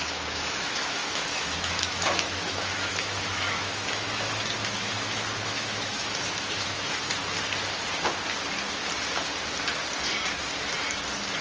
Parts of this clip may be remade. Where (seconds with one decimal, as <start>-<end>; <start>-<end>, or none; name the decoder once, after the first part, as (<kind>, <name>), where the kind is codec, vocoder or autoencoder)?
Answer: 0.0-7.1 (autoencoder, DAC-VAE)